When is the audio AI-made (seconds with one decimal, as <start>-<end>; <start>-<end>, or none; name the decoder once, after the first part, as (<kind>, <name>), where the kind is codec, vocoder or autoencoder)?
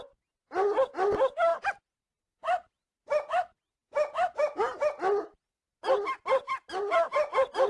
1.5-2.1 (vocoder, BigVGAN v2)